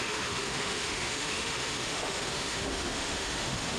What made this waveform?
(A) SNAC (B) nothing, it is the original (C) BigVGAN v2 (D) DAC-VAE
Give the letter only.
D